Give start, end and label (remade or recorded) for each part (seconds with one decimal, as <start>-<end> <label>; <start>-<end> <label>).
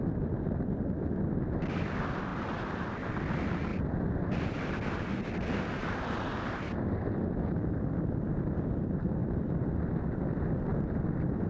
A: 0.0-11.5 recorded